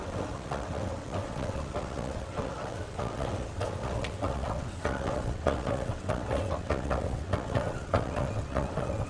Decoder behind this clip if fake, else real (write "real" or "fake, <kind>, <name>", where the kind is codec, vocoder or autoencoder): fake, vocoder, WaveNeXt